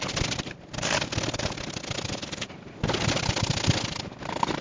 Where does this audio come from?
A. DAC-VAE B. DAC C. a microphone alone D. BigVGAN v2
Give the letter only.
C